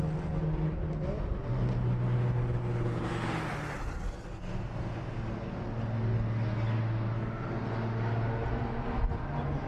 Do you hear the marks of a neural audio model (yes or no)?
no